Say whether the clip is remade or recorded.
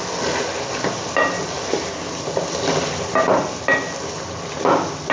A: recorded